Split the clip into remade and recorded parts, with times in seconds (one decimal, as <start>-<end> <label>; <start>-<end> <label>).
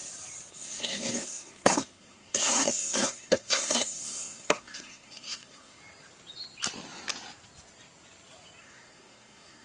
0.0-0.5 recorded; 0.5-5.8 remade; 5.8-8.6 recorded; 8.6-9.6 remade